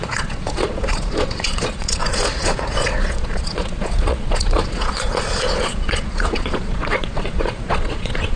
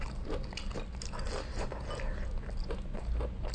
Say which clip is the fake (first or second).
first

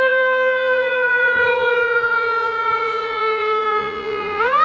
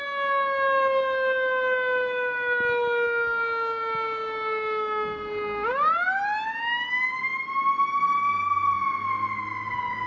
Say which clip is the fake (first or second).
first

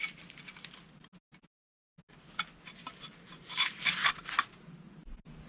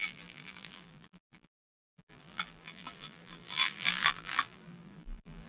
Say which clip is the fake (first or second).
second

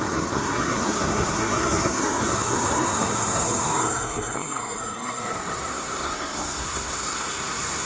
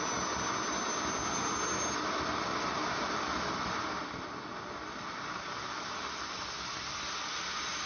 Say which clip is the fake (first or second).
first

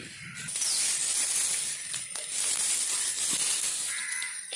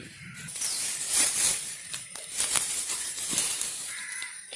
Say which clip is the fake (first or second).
second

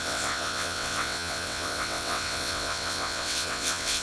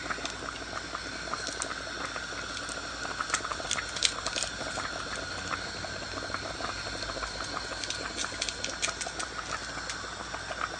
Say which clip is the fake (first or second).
first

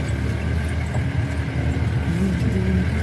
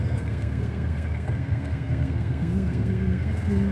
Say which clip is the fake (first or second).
second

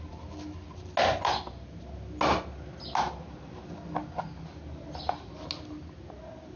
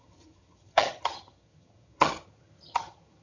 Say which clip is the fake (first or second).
second